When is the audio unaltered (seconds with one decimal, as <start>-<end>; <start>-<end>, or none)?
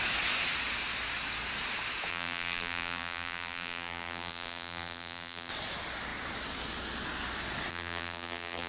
0.0-2.1; 5.5-7.7